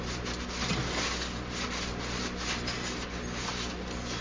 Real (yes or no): yes